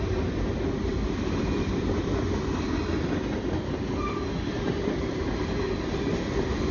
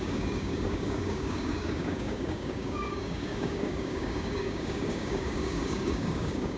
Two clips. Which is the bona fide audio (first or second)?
first